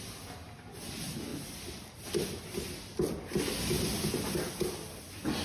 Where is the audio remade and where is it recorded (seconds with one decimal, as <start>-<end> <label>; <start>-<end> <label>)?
0.0-5.4 recorded